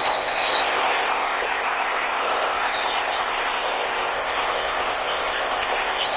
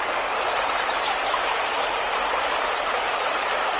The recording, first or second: second